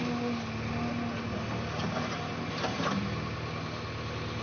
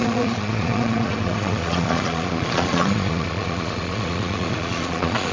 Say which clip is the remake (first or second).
second